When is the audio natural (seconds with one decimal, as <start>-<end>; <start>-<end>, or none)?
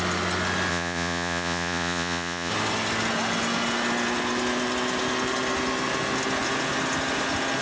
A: 0.0-0.7; 2.5-7.6